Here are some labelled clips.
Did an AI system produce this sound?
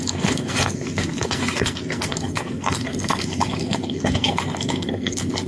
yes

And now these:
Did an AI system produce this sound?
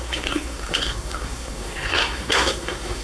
yes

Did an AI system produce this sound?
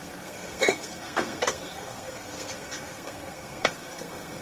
yes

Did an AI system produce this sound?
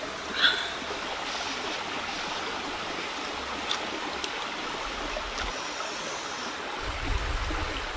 no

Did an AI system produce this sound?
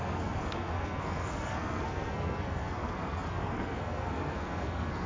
yes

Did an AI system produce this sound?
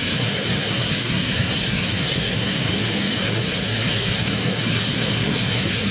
yes